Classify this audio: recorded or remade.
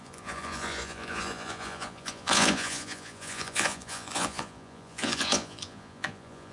remade